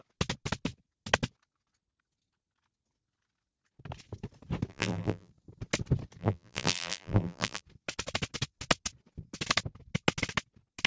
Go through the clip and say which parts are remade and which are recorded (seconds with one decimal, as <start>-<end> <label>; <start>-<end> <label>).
0.0-4.7 recorded; 4.7-5.3 remade; 5.3-6.2 recorded; 6.2-7.6 remade; 7.6-10.9 recorded